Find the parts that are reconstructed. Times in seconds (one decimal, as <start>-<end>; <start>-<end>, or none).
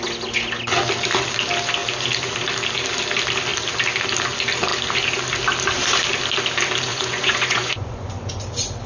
6.9-8.3